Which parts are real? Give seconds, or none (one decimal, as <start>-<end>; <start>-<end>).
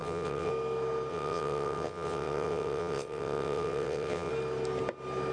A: 0.5-1.1; 4.3-5.3